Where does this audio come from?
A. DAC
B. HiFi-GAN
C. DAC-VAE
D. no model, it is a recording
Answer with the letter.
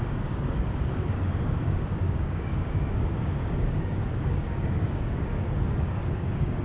A